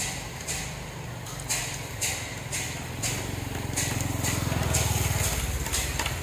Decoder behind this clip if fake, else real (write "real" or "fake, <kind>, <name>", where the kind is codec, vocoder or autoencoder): real